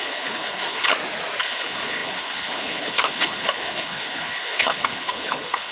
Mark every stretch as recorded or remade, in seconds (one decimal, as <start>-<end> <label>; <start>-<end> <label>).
0.0-0.9 remade; 0.9-1.4 recorded; 1.4-5.7 remade